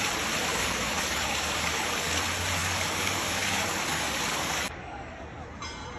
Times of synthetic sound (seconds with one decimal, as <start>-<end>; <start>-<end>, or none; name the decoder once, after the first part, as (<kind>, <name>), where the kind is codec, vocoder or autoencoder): 0.5-2.2 (codec, DAC); 2.6-5.4